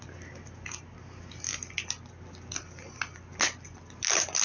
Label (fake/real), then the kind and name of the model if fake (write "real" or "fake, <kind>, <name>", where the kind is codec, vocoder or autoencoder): real